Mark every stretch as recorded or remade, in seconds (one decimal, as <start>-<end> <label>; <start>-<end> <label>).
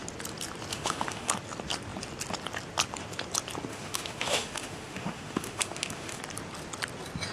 0.0-0.7 recorded; 0.7-1.3 remade; 1.3-3.7 recorded; 3.7-6.2 remade; 6.2-7.3 recorded